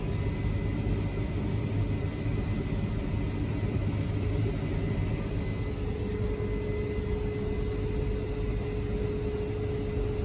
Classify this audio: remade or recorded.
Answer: recorded